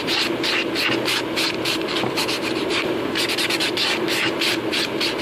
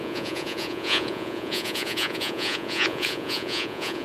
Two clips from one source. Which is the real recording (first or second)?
first